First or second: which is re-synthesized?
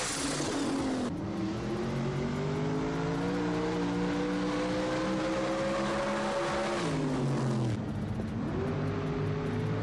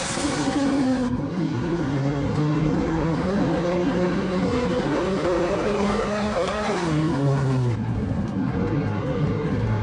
second